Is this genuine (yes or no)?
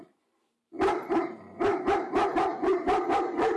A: no